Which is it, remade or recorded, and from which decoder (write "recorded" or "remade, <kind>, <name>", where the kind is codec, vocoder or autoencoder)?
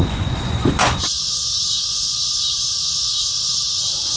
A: remade, vocoder, Vocos